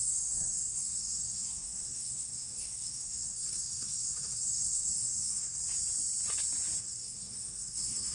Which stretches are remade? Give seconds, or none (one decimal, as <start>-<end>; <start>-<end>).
0.0-5.6; 6.8-8.1